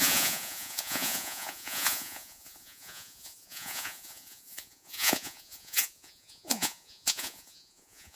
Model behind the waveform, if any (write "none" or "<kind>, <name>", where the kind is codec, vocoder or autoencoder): vocoder, Vocos